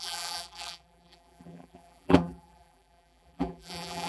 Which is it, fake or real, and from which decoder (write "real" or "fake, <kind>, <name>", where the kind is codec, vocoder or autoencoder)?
fake, vocoder, BigVGAN v2